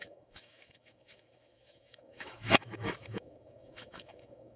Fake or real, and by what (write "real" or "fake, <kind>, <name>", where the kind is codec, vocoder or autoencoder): fake, autoencoder, DAC-VAE